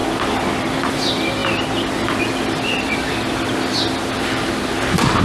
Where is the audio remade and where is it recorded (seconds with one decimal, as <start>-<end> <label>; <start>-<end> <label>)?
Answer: 0.0-5.2 remade